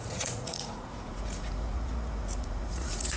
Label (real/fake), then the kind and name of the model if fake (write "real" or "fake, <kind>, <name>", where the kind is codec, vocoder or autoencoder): fake, vocoder, Vocos